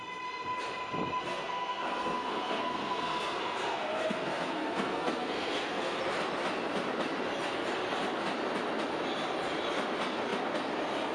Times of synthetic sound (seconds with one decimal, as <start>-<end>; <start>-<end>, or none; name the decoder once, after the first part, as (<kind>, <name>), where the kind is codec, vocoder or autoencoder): 1.2-6.0 (codec, SNAC)